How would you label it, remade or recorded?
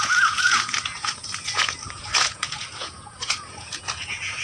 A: remade